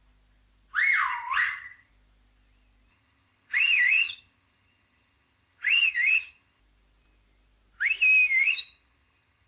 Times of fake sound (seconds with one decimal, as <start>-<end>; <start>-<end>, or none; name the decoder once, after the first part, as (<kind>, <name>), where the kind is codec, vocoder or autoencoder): 1.1-1.9 (vocoder, HiFi-GAN); 2.9-6.6; 8.4-9.5